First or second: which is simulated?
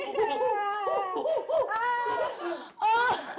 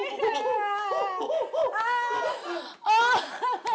first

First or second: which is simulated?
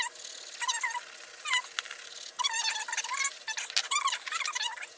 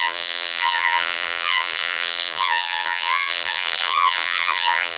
second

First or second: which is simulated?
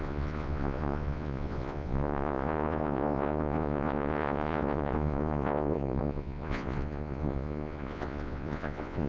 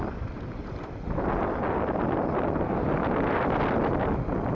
first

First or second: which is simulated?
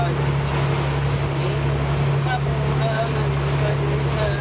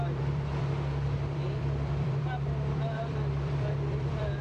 second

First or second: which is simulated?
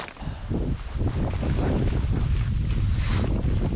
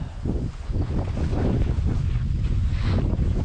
second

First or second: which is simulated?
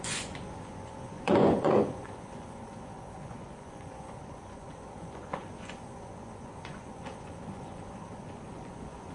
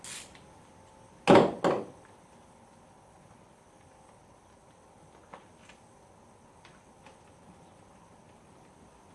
first